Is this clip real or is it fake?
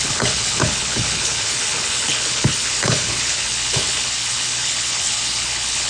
fake